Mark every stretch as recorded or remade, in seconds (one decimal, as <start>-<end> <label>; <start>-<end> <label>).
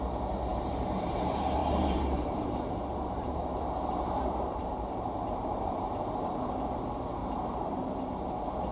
0.0-0.5 recorded; 0.5-1.1 remade; 1.1-1.6 recorded; 1.6-6.0 remade; 6.0-7.2 recorded; 7.2-8.1 remade; 8.1-8.7 recorded